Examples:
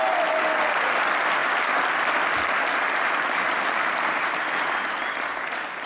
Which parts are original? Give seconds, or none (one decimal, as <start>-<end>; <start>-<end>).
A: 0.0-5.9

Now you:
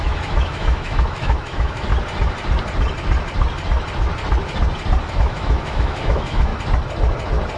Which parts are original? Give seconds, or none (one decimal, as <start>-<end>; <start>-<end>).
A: 1.9-5.1; 6.5-7.6

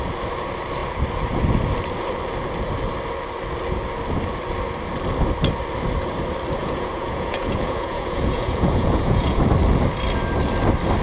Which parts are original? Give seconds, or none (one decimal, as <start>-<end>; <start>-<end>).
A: 0.0-6.6; 9.4-11.0